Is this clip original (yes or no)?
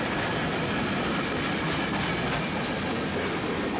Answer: yes